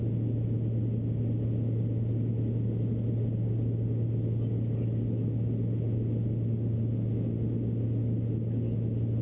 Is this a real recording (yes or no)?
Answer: yes